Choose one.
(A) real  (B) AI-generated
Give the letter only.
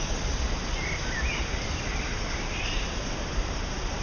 A